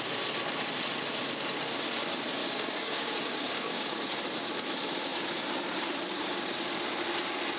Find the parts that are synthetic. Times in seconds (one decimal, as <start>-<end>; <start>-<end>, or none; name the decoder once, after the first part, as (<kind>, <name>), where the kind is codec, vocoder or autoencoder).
2.4-4.1 (codec, DAC)